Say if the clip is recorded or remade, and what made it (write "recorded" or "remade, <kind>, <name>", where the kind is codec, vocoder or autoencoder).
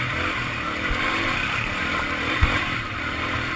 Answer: remade, vocoder, BigVGAN v2